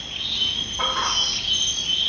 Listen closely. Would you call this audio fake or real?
real